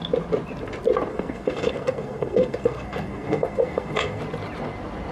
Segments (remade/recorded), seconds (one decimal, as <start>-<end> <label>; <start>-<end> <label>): 0.0-1.1 recorded; 1.1-4.2 remade; 4.2-5.1 recorded